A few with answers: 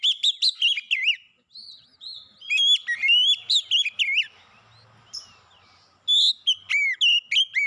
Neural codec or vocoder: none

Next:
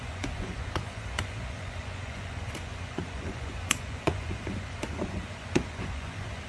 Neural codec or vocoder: vocoder, Vocos